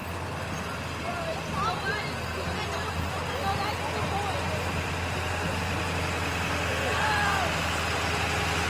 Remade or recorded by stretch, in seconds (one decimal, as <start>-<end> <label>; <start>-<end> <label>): 0.0-8.7 recorded